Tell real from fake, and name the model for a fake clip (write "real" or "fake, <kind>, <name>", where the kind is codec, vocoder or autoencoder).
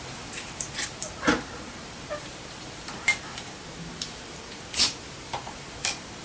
fake, vocoder, BigVGAN v2